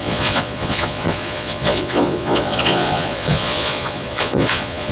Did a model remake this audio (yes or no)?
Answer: yes